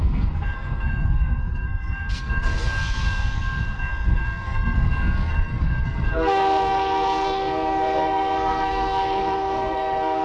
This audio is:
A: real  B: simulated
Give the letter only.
B